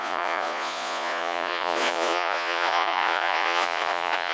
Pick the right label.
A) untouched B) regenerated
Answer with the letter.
B